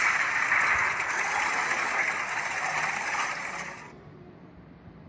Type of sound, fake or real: real